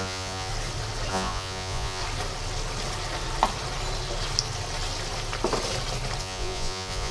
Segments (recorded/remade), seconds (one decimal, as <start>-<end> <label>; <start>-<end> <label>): 0.0-0.5 remade; 0.5-1.1 recorded; 1.1-2.0 remade; 2.0-6.2 recorded; 6.2-7.1 remade